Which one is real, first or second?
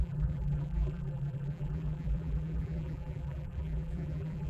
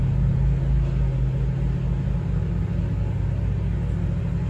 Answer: second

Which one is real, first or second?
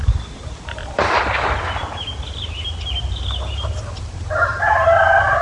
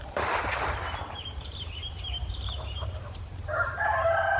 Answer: first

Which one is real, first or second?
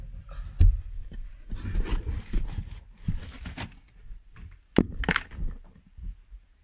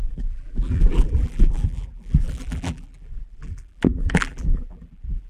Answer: first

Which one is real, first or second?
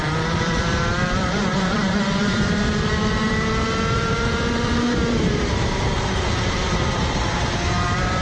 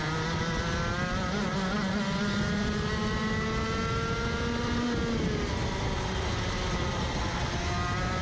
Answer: second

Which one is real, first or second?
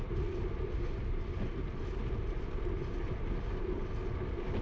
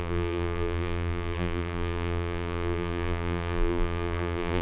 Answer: first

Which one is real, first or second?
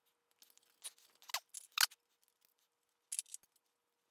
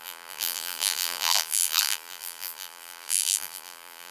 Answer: first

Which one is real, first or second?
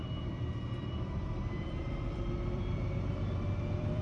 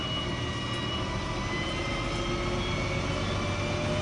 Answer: second